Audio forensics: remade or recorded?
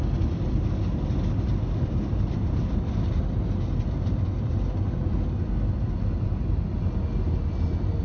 recorded